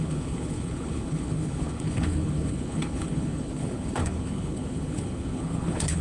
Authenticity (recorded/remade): remade